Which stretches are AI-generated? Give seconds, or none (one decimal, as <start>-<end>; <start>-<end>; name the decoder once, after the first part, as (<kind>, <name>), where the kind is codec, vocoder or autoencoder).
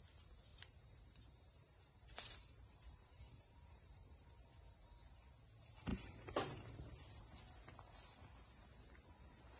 0.5-4.3 (vocoder, BigVGAN v2); 5.9-7.2